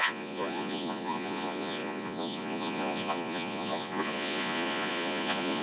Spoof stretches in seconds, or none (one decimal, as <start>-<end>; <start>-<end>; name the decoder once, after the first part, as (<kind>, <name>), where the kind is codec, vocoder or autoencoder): 0.0-5.6 (vocoder, Vocos)